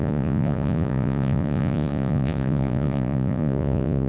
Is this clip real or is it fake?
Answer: fake